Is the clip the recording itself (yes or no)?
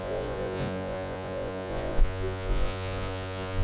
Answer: no